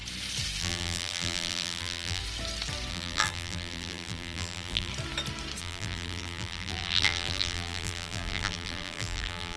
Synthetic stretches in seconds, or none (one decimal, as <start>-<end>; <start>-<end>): 0.6-2.2; 2.9-4.9; 5.6-9.6